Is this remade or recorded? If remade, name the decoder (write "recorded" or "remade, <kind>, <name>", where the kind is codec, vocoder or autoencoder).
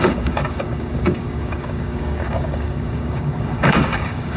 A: remade, codec, DAC